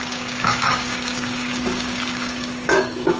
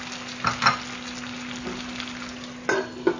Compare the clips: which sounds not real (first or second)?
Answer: first